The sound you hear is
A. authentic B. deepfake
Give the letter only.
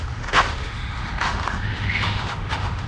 B